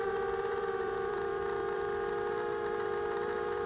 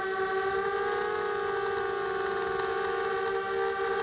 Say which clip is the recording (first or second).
second